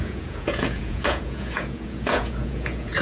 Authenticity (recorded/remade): remade